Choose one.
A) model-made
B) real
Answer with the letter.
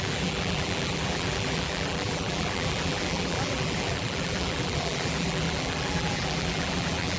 A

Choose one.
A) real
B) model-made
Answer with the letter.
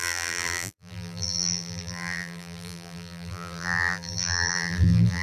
B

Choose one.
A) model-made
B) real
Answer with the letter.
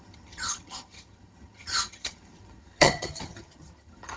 A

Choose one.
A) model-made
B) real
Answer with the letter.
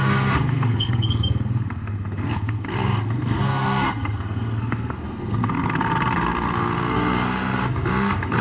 A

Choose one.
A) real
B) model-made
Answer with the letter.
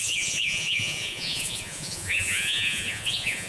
B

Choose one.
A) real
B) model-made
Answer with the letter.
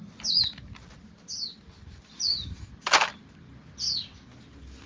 A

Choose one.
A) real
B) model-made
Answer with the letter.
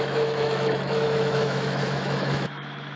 B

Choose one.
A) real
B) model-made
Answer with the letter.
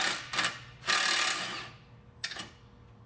A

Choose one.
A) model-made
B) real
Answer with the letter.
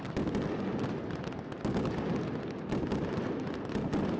B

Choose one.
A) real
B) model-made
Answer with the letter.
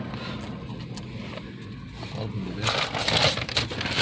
A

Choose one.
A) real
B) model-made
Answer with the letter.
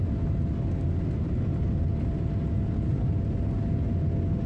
A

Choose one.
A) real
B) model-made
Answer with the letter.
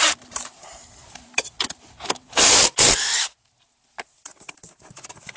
B